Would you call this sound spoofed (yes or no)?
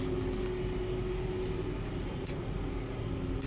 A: no